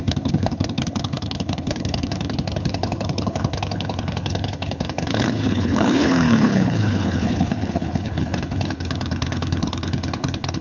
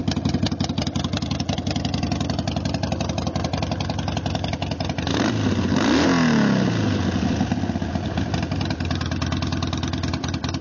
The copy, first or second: first